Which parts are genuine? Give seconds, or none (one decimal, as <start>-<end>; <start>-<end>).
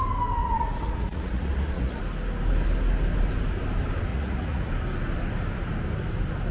0.0-0.4; 2.0-4.1; 4.7-6.5